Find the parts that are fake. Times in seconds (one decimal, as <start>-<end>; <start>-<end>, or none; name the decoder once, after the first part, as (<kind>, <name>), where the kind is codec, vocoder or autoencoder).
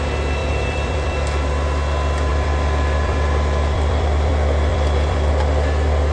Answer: 0.4-1.5 (vocoder, BigVGAN v2); 2.3-4.3; 4.7-5.3